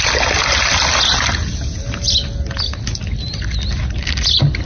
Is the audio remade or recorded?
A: recorded